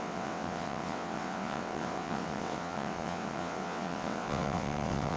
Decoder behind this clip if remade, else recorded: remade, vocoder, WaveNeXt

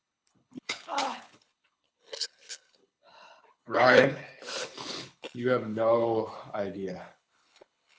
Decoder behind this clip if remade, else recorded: remade, codec, HILCodec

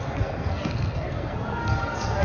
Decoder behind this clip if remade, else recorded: remade, codec, SNAC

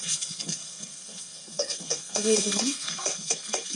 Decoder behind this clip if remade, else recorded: remade, codec, SNAC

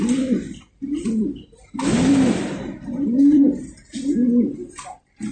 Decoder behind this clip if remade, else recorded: remade, vocoder, BigVGAN v2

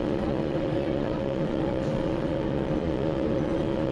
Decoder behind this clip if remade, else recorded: remade, vocoder, Vocos